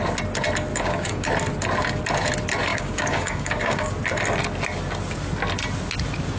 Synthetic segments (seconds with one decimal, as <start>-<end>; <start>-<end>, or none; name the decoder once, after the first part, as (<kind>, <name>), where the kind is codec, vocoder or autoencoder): 0.7-1.3 (codec, DAC); 2.7-3.9